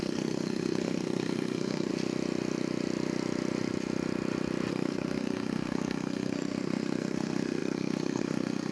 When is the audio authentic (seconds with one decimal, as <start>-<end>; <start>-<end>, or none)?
1.9-4.7